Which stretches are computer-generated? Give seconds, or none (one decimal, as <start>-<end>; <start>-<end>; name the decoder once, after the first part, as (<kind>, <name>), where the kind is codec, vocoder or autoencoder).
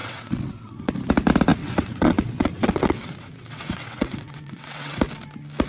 0.0-0.9 (vocoder, WaveNeXt); 1.6-5.0